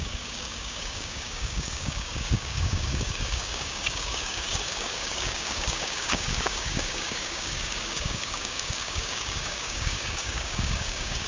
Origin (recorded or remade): remade